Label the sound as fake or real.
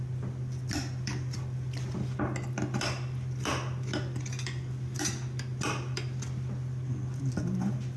real